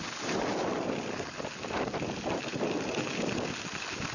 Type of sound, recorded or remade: recorded